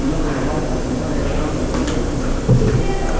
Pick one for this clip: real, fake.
real